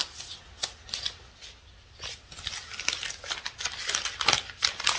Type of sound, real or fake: real